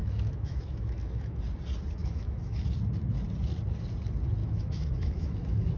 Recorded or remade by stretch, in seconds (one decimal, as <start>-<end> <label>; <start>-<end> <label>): 0.0-1.4 remade; 1.4-2.0 recorded; 2.0-2.7 remade; 2.7-4.4 recorded; 4.4-5.8 remade